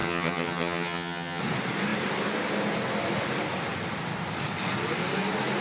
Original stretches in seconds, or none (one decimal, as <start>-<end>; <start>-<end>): 1.4-5.6